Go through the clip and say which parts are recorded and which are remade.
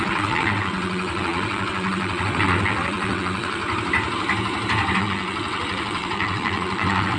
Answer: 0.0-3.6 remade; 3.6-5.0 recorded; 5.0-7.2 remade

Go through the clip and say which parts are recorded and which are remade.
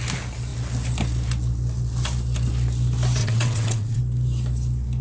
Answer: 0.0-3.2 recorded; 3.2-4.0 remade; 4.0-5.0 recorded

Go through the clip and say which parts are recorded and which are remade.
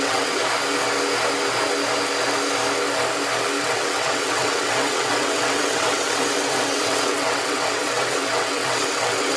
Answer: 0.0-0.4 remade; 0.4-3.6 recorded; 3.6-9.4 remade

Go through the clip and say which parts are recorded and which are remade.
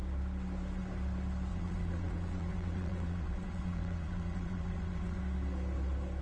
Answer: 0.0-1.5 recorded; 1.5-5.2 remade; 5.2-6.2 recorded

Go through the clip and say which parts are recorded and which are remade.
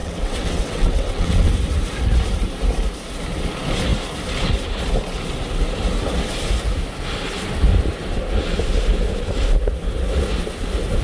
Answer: 0.0-1.5 remade; 1.5-11.0 recorded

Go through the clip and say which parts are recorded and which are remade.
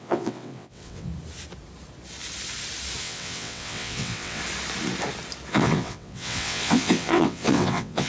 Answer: 0.0-1.1 remade; 1.1-3.0 recorded; 3.0-4.4 remade; 4.4-5.5 recorded; 5.5-8.1 remade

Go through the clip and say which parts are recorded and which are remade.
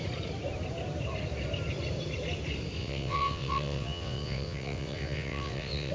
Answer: 0.0-2.8 recorded; 2.8-5.9 remade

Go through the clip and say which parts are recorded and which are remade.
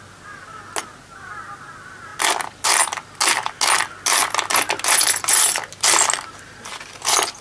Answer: 0.0-7.4 recorded